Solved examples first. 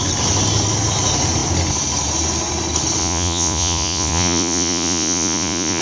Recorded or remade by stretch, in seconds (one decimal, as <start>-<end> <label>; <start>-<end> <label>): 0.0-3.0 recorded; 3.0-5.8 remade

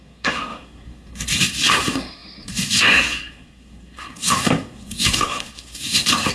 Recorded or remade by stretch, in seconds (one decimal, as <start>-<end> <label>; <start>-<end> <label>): 0.0-6.3 remade

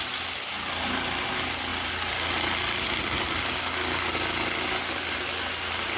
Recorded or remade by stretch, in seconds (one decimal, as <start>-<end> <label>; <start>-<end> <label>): 0.0-6.0 recorded